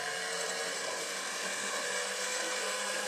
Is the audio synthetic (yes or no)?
yes